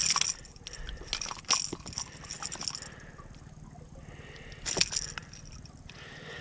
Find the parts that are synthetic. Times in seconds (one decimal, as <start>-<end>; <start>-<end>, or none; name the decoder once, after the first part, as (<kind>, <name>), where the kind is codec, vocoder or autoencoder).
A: 5.2-6.4 (vocoder, BigVGAN v2)